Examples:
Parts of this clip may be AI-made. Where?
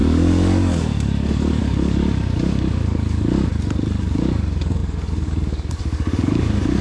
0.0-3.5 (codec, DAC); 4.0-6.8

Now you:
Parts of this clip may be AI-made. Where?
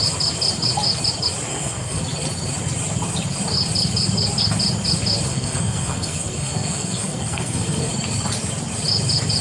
1.5-2.0 (codec, SNAC); 5.3-7.9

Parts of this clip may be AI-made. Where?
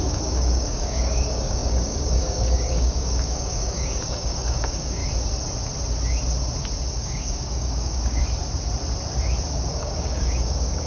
0.0-5.0 (codec, DAC); 6.9-8.2; 9.7-10.9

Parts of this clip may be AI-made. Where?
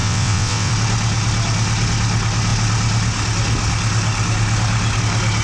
0.0-0.7 (vocoder, WaveNeXt)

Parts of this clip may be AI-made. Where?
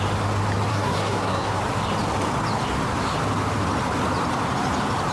0.7-1.6 (codec, SNAC)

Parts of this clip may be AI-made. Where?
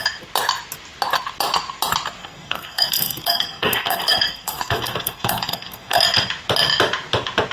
2.2-6.0 (codec, SNAC)